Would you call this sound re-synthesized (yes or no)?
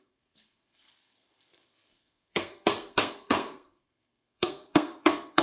yes